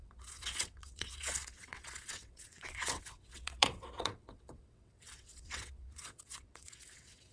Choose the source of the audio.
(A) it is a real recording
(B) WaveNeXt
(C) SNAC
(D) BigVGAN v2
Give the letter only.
B